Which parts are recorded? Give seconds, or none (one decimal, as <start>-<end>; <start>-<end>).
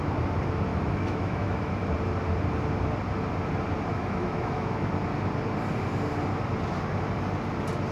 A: 0.0-0.7; 1.9-3.9; 4.9-7.9